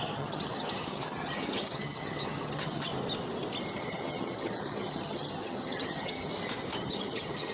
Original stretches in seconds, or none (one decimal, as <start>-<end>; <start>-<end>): 2.9-3.7; 6.3-6.8